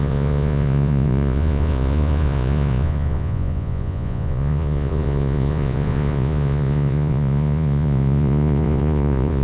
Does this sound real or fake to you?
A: fake